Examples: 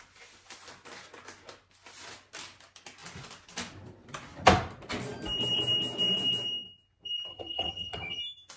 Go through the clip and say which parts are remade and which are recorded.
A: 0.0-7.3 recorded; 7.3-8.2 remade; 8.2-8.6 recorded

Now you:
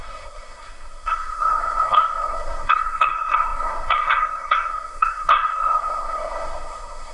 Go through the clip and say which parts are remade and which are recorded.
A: 0.0-7.1 remade